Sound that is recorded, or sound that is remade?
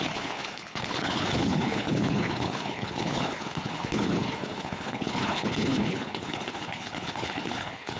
remade